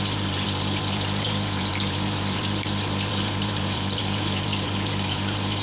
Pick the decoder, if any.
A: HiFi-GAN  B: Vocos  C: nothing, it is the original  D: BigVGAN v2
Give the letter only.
D